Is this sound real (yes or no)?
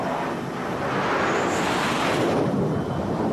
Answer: yes